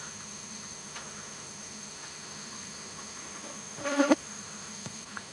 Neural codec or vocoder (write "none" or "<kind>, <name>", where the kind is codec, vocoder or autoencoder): autoencoder, DAC-VAE